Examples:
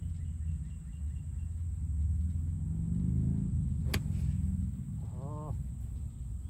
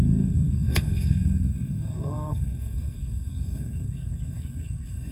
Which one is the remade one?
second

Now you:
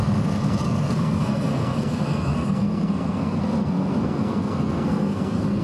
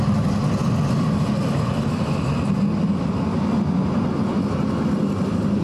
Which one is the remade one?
first